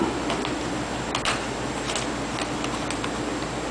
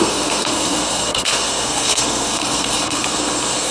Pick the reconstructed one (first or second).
second